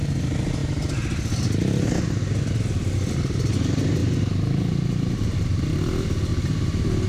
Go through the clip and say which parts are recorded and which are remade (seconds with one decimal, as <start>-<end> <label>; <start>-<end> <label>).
0.0-4.0 recorded; 4.0-5.2 remade; 5.2-6.3 recorded; 6.3-7.1 remade